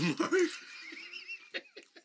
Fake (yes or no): no